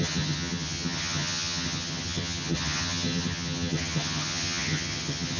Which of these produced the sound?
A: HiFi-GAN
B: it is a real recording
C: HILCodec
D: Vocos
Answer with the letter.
A